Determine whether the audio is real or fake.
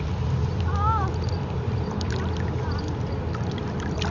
fake